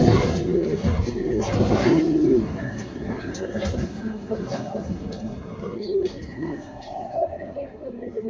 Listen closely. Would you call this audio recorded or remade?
remade